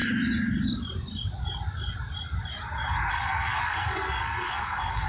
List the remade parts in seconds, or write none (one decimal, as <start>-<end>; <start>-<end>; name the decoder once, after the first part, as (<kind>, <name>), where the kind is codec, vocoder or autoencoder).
3.1-5.1 (codec, SNAC)